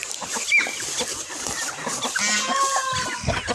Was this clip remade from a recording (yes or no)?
no